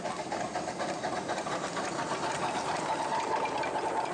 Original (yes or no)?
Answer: yes